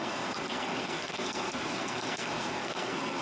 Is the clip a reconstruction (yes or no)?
yes